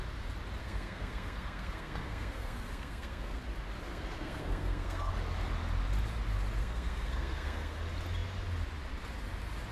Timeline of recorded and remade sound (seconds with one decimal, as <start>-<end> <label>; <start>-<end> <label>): 0.0-0.6 recorded; 0.6-3.4 remade; 3.4-3.9 recorded; 3.9-5.1 remade; 5.1-6.6 recorded; 6.6-7.8 remade; 7.8-9.7 recorded